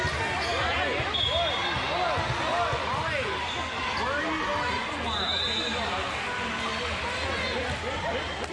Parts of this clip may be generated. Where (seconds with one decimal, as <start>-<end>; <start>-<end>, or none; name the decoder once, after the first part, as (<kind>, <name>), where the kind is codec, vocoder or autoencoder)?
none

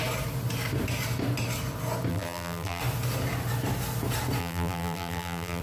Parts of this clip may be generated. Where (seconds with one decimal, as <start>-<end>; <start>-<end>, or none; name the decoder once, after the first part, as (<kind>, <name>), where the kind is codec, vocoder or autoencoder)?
2.1-2.8 (vocoder, BigVGAN v2); 4.4-5.6

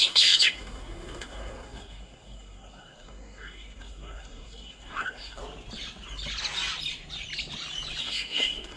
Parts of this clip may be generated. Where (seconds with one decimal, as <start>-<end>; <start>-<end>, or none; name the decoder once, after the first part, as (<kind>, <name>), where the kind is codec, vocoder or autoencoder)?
0.0-5.4 (codec, SNAC); 8.0-8.8

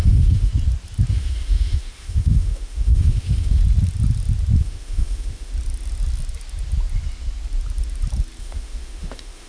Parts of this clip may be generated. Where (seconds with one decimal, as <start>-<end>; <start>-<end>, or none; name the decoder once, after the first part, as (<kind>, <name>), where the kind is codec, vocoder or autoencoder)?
0.0-0.5 (autoencoder, DAC-VAE); 1.1-3.6; 4.6-5.5; 8.4-9.5

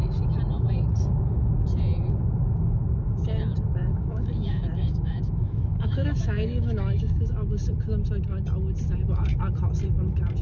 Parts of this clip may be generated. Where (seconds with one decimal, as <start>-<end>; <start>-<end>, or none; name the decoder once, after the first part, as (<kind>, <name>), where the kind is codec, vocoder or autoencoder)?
3.8-7.6 (autoencoder, DAC-VAE)

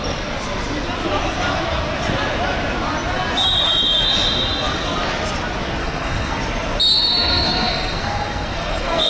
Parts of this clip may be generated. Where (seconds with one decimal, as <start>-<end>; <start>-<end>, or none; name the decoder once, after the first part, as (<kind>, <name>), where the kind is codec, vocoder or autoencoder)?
5.8-6.4 (codec, SNAC); 7.3-9.1

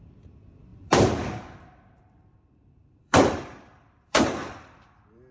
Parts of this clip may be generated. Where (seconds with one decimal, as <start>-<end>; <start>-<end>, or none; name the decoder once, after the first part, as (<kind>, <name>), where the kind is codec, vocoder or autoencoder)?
0.7-2.4 (vocoder, BigVGAN v2); 2.8-4.5

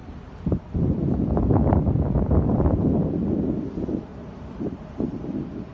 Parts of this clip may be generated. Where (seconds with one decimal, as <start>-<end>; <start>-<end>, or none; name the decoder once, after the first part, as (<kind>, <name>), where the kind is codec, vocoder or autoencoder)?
0.0-1.4 (vocoder, BigVGAN v2); 2.5-3.3; 4.1-5.7